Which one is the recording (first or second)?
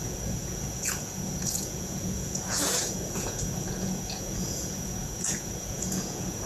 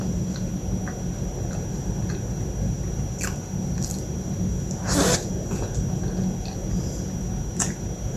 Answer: second